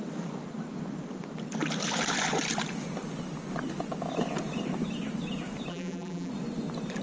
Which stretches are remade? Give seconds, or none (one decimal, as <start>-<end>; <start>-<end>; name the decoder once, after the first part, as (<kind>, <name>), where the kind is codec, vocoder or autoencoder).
5.7-6.3 (vocoder, BigVGAN v2)